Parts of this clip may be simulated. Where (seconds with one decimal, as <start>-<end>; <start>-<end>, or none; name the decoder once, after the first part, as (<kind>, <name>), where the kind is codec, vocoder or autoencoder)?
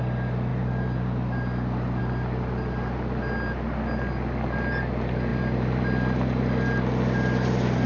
none